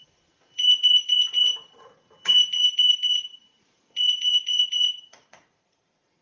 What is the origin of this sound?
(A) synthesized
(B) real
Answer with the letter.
A